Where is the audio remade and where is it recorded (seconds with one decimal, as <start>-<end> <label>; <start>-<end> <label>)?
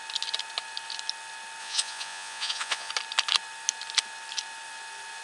0.0-1.6 recorded; 1.6-2.9 remade; 2.9-5.2 recorded